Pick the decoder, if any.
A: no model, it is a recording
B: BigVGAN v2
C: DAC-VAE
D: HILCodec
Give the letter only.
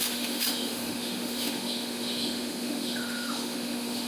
C